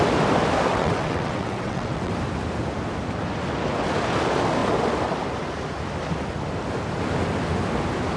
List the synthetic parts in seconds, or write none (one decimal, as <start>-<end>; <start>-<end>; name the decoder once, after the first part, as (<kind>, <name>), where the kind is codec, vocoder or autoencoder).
0.7-2.1 (vocoder, WaveNeXt)